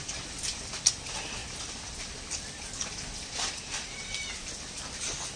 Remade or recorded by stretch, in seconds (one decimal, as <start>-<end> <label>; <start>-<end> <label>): 0.0-5.4 recorded